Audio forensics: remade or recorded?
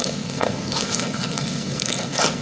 remade